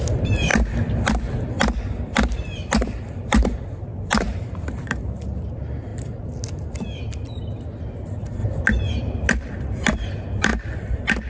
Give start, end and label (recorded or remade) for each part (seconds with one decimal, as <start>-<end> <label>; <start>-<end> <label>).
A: 0.0-5.9 remade; 5.9-7.8 recorded; 7.8-10.5 remade; 10.5-11.3 recorded